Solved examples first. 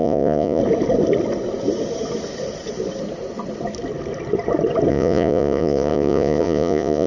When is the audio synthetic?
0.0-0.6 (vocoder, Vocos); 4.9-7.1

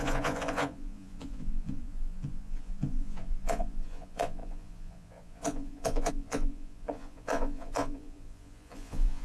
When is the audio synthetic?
0.0-9.2 (vocoder, Vocos)

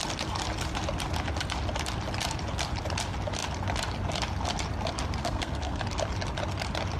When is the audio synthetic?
5.2-5.8 (codec, SNAC)

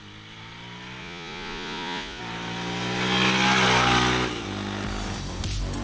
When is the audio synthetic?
1.0-2.2 (vocoder, Vocos)